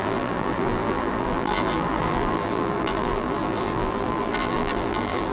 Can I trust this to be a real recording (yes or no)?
no